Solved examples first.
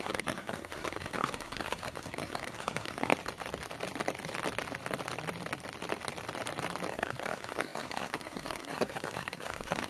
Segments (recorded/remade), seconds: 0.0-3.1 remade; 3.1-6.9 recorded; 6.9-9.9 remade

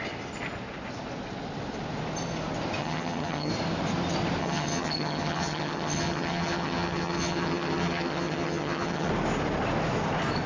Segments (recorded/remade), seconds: 0.0-2.8 recorded; 2.8-3.5 remade; 3.5-4.4 recorded; 4.4-9.1 remade; 9.1-10.5 recorded

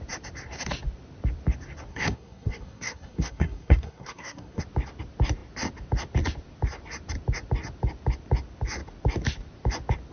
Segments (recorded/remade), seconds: 0.0-1.9 recorded; 1.9-4.6 remade; 4.6-10.1 recorded

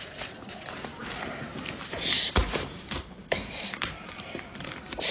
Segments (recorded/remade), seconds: 0.0-5.1 remade

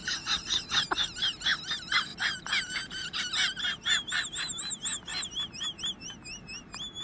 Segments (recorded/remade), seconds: 0.0-2.1 recorded; 2.1-3.2 remade; 3.2-7.0 recorded

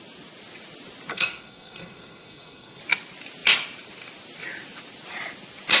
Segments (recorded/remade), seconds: 0.0-1.1 recorded; 1.1-2.8 remade; 2.8-5.8 recorded

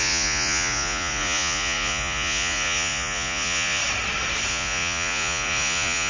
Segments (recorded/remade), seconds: 0.0-3.8 remade; 3.8-4.5 recorded; 4.5-6.1 remade